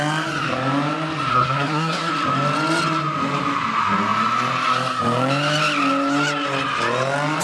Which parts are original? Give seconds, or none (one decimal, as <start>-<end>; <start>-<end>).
0.0-1.3; 2.1-7.4